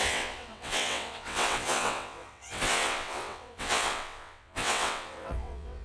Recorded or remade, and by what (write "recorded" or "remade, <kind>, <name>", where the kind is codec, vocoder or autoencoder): remade, vocoder, WaveNeXt